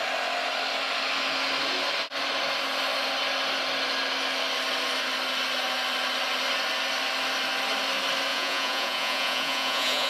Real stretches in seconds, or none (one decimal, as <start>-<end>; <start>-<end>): 0.0-8.3